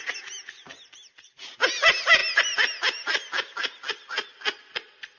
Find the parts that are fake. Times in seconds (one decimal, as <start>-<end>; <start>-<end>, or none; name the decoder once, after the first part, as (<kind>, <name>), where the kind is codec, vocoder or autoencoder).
none